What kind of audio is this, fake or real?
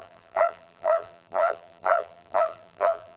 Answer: fake